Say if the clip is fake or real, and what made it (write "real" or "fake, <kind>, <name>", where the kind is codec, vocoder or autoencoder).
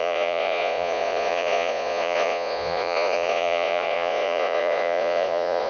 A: fake, vocoder, Vocos